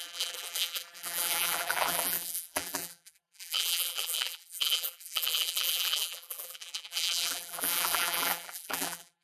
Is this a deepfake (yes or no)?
yes